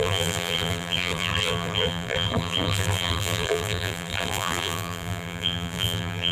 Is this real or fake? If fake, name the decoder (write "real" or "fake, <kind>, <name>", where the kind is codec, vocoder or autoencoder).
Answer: fake, vocoder, BigVGAN v2